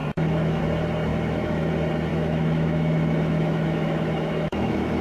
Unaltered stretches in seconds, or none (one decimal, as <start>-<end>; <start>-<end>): 0.6-1.1; 1.7-2.1

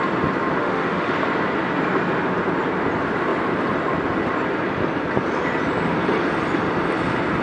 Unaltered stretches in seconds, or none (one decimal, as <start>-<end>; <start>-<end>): 0.0-0.6; 1.1-7.4

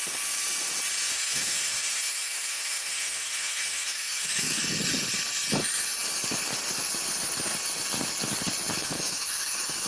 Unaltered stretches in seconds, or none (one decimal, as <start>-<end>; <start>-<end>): 0.0-1.1; 4.6-8.8